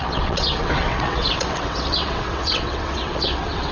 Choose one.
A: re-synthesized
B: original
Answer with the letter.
A